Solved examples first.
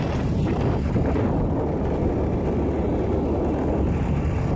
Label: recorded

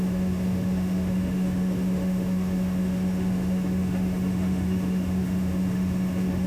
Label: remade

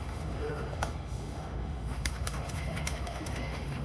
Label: remade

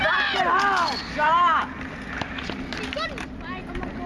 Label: recorded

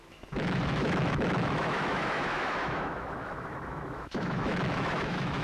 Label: remade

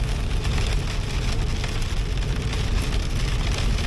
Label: recorded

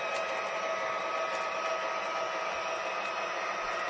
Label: recorded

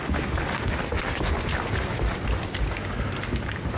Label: recorded